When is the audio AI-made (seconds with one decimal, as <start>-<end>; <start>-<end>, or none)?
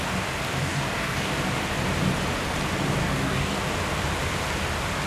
0.6-1.3; 3.0-3.6